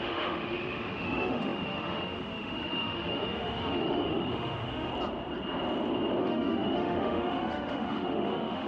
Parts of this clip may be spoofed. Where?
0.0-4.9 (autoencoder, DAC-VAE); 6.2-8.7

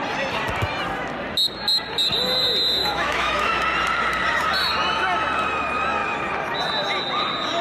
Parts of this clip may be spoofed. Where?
2.8-3.6 (autoencoder, DAC-VAE)

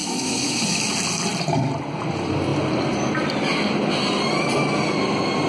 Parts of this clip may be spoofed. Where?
0.0-0.8 (autoencoder, DAC-VAE)